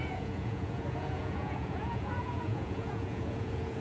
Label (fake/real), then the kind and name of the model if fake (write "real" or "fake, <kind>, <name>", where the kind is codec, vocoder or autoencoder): fake, vocoder, Vocos